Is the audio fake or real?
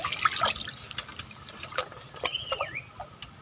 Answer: real